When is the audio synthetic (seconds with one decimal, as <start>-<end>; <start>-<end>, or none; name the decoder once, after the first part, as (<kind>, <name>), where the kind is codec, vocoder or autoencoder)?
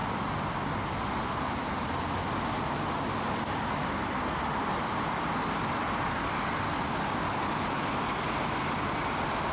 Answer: 0.0-0.7 (vocoder, BigVGAN v2)